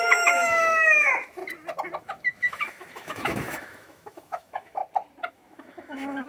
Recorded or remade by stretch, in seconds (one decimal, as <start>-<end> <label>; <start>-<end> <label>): 0.0-1.4 remade; 1.4-2.0 recorded; 2.0-4.8 remade; 4.8-5.3 recorded; 5.3-6.3 remade